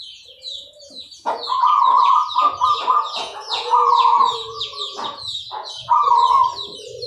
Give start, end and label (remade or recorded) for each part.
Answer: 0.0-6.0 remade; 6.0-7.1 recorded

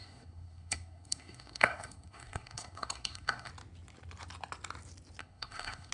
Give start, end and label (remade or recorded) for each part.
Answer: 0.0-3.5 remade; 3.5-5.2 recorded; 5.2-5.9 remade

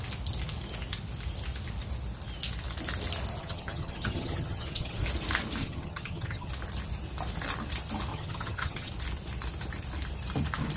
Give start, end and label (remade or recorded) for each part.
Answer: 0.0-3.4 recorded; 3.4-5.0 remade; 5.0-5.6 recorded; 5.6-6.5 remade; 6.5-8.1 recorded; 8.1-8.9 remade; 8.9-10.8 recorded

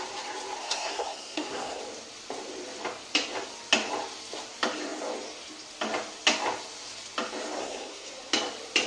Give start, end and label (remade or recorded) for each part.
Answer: 0.0-0.6 recorded; 0.6-1.8 remade; 1.8-7.6 recorded; 7.6-8.1 remade; 8.1-8.9 recorded

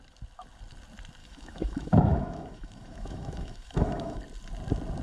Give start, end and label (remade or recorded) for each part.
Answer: 0.0-1.2 recorded; 1.2-4.2 remade; 4.2-5.0 recorded

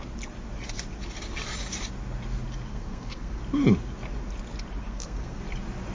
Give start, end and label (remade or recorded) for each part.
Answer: 0.0-2.7 recorded; 2.7-3.4 remade; 3.4-4.8 recorded; 4.8-5.4 remade; 5.4-5.9 recorded